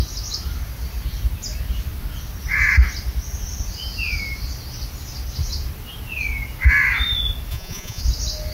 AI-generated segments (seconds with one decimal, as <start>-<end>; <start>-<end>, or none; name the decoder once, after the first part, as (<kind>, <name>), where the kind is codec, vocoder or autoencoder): 7.5-8.0 (vocoder, Vocos)